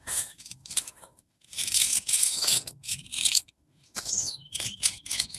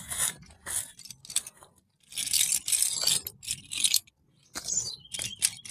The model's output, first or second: first